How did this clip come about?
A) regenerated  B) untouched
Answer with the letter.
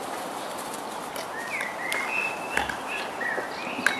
B